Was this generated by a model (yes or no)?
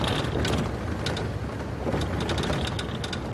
no